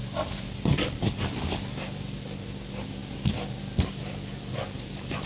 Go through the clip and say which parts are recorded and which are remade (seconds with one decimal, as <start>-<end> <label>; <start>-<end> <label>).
0.0-5.3 recorded